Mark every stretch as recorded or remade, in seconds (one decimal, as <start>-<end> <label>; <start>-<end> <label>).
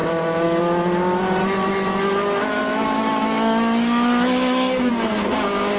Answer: 0.0-0.6 remade; 0.6-1.4 recorded; 1.4-4.9 remade; 4.9-5.8 recorded